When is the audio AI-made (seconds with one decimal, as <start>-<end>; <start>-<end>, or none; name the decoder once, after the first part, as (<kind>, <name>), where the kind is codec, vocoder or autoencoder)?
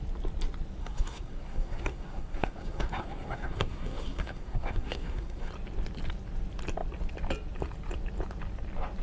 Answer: 0.8-5.5 (codec, SNAC)